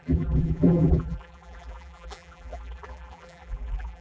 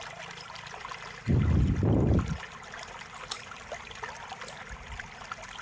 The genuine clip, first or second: second